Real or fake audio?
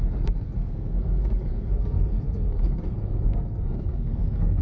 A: fake